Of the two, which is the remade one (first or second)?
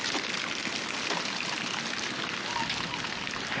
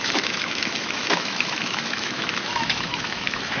second